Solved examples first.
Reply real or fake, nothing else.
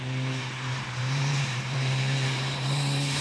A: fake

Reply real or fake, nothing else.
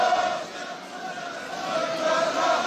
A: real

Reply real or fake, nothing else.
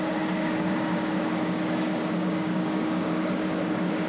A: fake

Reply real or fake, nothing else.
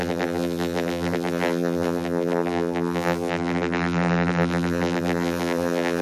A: fake